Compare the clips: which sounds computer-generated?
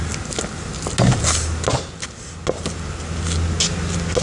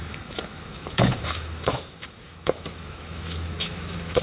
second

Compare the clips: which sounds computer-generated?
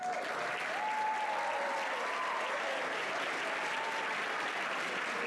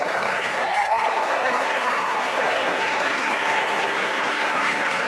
second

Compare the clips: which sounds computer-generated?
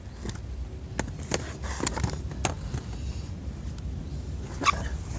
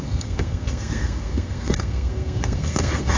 second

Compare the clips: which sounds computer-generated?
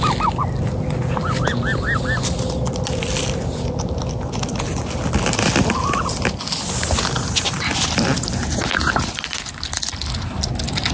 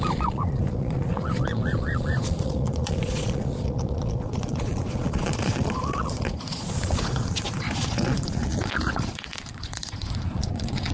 second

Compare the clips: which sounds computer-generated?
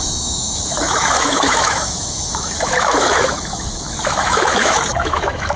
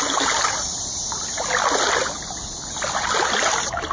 first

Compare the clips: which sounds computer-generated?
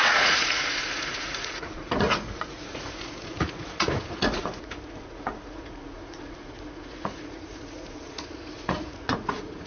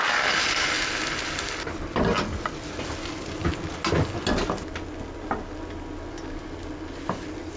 first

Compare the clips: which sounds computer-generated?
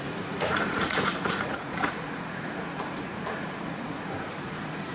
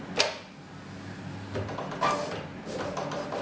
first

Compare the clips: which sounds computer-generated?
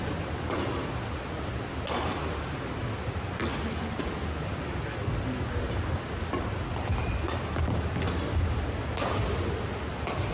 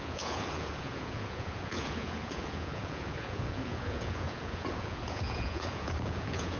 second